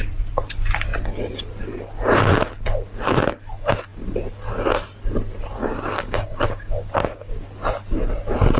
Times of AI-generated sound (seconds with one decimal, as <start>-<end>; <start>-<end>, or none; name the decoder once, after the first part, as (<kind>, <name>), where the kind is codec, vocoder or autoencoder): 5.6-7.3 (codec, DAC)